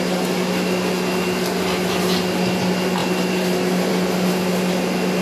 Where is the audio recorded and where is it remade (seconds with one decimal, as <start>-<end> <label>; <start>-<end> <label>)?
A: 0.0-5.2 recorded